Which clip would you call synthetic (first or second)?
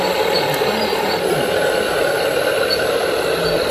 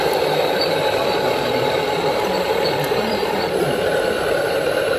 second